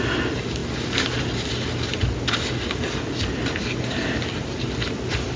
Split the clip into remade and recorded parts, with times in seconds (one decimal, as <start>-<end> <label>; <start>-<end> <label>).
0.0-5.4 recorded